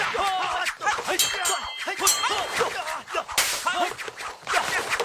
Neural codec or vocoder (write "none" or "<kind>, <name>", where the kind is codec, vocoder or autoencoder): none